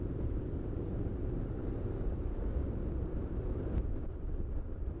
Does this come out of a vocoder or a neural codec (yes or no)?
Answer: yes